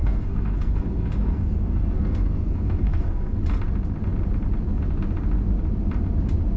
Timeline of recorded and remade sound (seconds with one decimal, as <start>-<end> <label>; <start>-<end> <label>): 0.0-3.4 remade; 3.4-6.6 recorded